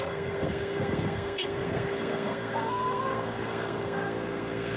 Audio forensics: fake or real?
fake